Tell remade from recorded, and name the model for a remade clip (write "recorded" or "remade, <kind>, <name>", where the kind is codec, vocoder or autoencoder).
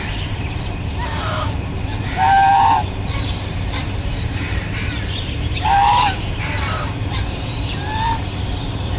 remade, vocoder, BigVGAN v2